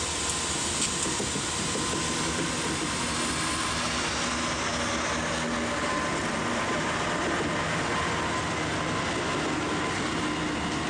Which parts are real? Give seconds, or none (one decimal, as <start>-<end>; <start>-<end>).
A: 0.0-10.9